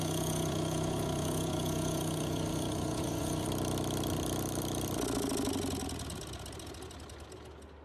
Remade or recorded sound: recorded